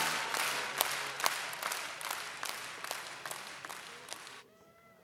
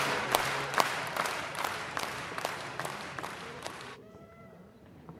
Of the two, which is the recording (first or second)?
first